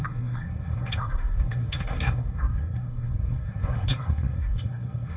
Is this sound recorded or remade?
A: remade